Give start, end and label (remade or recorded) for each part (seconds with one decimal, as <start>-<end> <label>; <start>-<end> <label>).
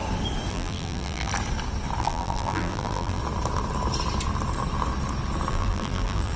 0.0-0.5 recorded; 0.5-1.3 remade; 1.3-2.0 recorded; 2.0-3.2 remade; 3.2-5.5 recorded; 5.5-6.4 remade